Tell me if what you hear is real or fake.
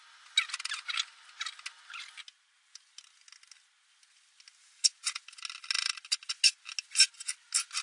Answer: real